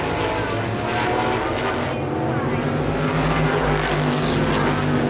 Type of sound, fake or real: real